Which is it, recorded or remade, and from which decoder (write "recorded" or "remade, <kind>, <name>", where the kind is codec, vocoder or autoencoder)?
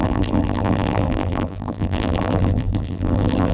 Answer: remade, vocoder, BigVGAN v2